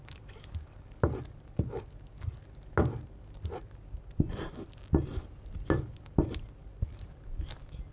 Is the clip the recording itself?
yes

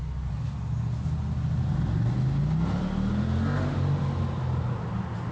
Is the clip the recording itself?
yes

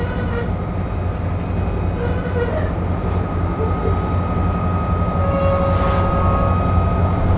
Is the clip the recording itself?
yes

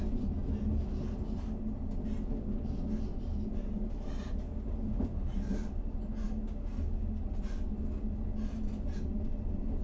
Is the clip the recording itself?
yes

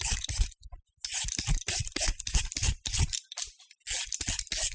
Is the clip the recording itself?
yes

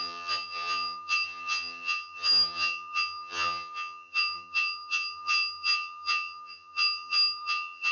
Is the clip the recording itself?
no